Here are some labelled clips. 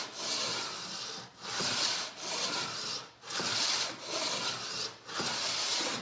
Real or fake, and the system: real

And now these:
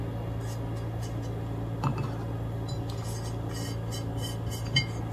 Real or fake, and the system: real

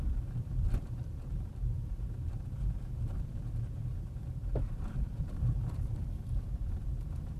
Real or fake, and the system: fake, vocoder, BigVGAN v2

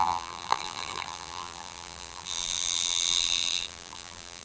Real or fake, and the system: fake, vocoder, BigVGAN v2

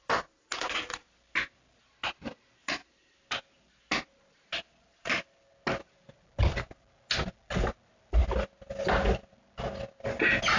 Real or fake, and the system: real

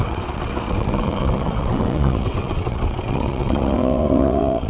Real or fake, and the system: fake, vocoder, WaveNeXt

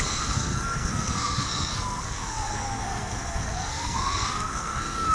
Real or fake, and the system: fake, codec, SNAC